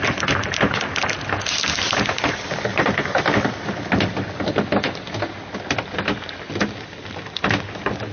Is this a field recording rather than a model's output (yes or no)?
yes